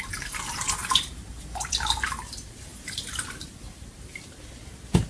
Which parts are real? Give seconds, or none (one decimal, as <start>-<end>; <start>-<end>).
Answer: 0.0-0.8; 2.2-2.7; 4.0-5.1

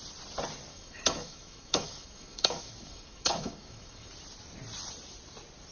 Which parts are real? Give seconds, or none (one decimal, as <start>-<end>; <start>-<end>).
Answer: 0.0-0.7; 4.1-5.7

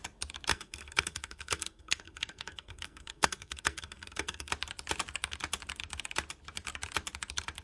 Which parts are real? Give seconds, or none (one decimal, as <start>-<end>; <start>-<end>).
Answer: 0.0-0.5; 4.5-7.6

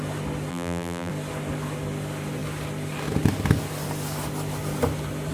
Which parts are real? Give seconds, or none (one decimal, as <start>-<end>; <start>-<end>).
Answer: 0.0-0.5; 1.1-5.3

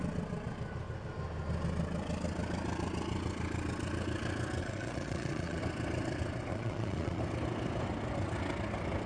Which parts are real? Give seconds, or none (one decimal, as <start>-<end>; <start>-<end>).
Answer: 0.0-4.6; 5.6-6.5; 7.2-9.1